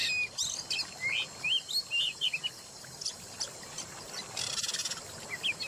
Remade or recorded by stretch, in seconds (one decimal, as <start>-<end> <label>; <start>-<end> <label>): 0.0-5.7 recorded